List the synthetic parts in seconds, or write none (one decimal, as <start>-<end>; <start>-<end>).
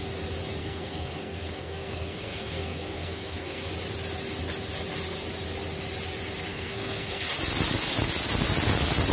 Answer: 0.6-3.7; 6.5-7.2